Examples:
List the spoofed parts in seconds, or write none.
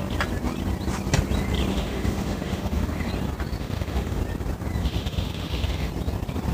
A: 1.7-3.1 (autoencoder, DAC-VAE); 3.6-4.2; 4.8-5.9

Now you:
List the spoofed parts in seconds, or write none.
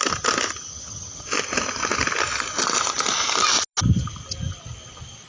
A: 0.7-1.2 (vocoder, HiFi-GAN)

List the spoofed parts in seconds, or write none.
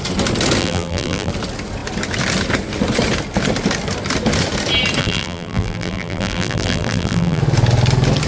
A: 0.6-1.3 (vocoder, BigVGAN v2); 5.0-7.4